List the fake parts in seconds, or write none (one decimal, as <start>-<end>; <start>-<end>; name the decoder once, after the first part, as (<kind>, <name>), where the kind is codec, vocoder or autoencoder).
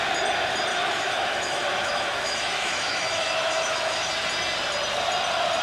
0.7-4.1 (autoencoder, DAC-VAE)